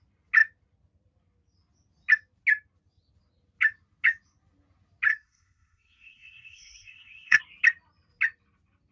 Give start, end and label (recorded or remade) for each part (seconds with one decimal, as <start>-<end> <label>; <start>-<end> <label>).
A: 0.0-5.1 recorded; 5.1-7.4 remade; 7.4-8.9 recorded